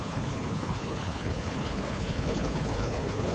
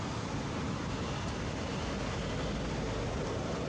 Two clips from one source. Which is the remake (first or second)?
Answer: first